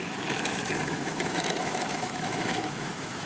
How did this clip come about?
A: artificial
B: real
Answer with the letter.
A